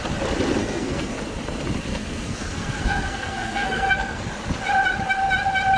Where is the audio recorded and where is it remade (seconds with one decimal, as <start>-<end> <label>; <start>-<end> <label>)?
0.0-0.6 recorded; 0.6-1.1 remade; 1.1-1.9 recorded; 1.9-4.3 remade; 4.3-5.8 recorded